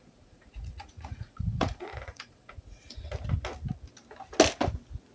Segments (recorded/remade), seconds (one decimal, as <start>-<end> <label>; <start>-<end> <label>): 0.0-3.1 remade; 3.1-5.1 recorded

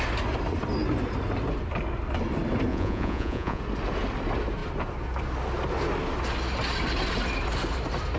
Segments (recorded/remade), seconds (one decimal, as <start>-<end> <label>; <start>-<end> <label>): 0.0-2.7 recorded; 2.7-3.6 remade; 3.6-8.2 recorded

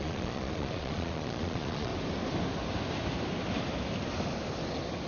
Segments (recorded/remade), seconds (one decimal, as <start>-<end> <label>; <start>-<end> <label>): 0.0-1.9 remade; 1.9-5.1 recorded

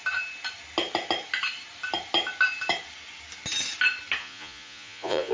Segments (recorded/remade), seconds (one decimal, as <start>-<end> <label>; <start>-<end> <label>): 0.0-4.2 recorded; 4.2-5.3 remade

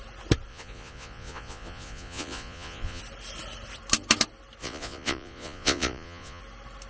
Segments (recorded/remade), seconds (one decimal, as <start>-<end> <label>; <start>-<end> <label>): 0.0-0.5 recorded; 0.5-3.0 remade; 3.0-4.6 recorded; 4.6-6.4 remade; 6.4-6.9 recorded

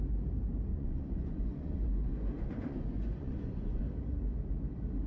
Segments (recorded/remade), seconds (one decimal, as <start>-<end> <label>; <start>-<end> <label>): 0.0-0.7 recorded; 0.7-3.8 remade; 3.8-5.1 recorded

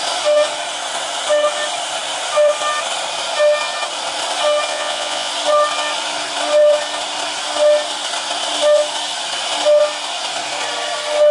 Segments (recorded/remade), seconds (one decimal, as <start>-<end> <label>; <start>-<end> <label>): 0.0-4.7 recorded; 4.7-5.3 remade; 5.3-11.3 recorded

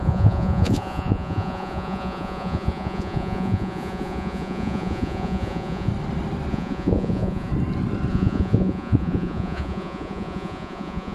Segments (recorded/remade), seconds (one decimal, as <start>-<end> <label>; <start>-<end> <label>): 0.0-5.9 remade; 5.9-6.5 recorded; 6.5-7.5 remade; 7.5-8.1 recorded; 8.1-11.1 remade